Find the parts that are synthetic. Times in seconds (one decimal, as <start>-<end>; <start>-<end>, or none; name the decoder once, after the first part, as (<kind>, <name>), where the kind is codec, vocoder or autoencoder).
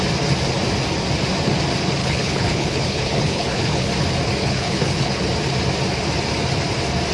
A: 2.0-3.9 (codec, HILCodec); 4.4-5.2